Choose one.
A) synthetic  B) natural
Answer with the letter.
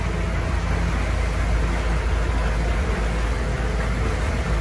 B